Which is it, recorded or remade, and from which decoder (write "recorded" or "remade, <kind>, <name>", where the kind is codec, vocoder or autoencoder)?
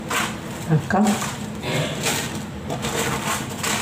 remade, vocoder, BigVGAN v2